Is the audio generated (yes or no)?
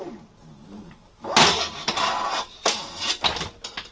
no